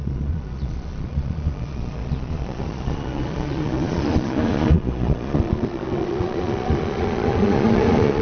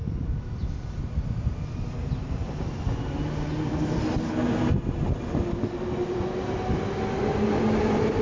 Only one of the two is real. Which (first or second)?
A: second